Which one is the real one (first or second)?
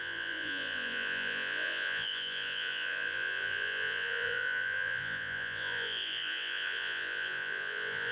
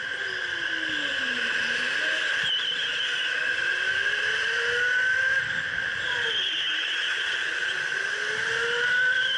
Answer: second